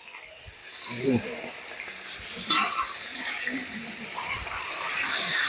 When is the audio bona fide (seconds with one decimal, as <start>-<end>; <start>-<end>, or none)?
0.0-0.6; 1.5-2.3

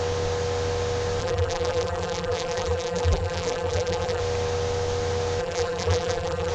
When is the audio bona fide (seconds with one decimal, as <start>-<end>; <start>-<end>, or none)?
0.0-1.2; 4.2-5.4

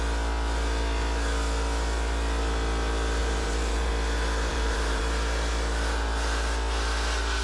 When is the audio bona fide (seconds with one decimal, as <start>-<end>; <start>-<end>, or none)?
0.0-3.2; 3.9-4.5; 5.0-7.4

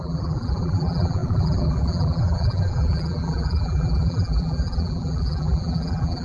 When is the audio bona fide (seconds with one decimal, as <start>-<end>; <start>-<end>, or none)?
none

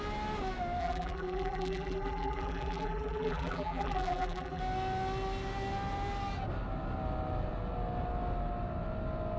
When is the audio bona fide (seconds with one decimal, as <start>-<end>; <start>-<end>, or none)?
0.0-0.8; 4.6-9.4